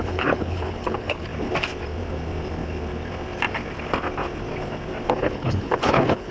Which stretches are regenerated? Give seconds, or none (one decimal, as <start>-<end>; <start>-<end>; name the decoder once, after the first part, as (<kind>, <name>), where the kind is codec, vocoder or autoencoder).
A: 0.0-1.3 (codec, HILCodec); 5.1-6.3